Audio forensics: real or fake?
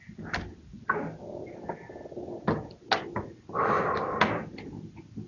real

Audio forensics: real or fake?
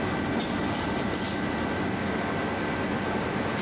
real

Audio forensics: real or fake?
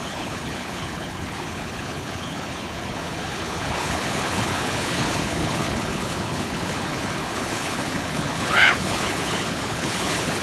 fake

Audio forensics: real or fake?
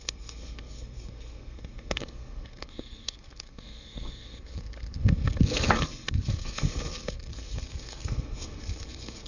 fake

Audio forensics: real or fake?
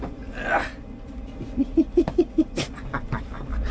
real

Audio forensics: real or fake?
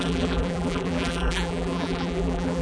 fake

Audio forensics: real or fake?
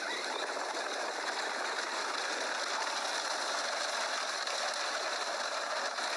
real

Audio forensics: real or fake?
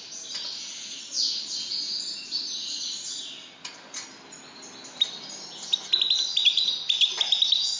real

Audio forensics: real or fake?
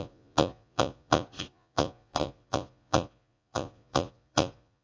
fake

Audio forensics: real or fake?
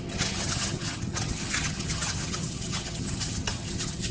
fake